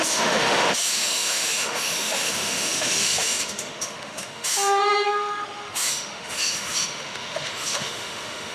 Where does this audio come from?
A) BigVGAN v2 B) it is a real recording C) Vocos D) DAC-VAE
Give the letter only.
D